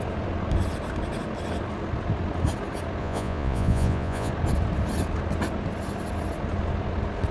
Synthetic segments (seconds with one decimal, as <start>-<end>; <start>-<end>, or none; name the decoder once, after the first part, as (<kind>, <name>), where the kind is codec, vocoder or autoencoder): 3.0-4.3 (vocoder, Vocos)